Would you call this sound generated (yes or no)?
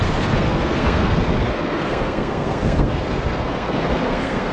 yes